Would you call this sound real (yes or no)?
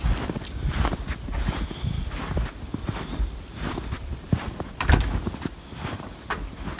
yes